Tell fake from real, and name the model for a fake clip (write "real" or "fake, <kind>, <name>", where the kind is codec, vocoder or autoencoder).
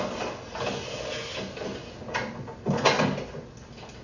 real